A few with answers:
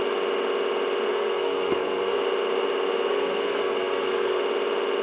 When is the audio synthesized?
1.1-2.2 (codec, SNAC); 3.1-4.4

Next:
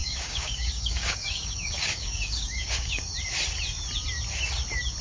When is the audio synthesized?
0.0-3.0 (codec, DAC)

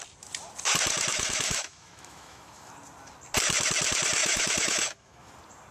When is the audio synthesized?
1.1-2.7 (autoencoder, DAC-VAE); 4.2-5.3

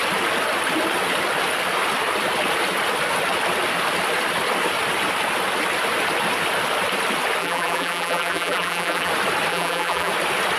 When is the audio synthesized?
7.4-9.1 (vocoder, BigVGAN v2); 9.5-10.1

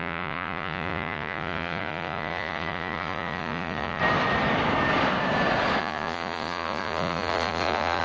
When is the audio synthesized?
0.0-4.0 (vocoder, Vocos); 5.8-8.0

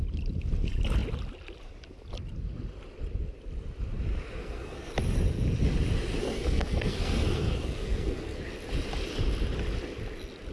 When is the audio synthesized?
4.4-4.9 (codec, SNAC); 6.2-8.4

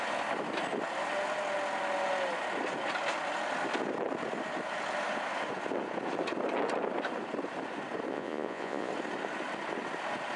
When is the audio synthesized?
8.1-8.9 (vocoder, Vocos)

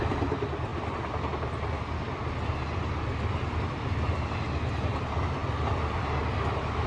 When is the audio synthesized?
none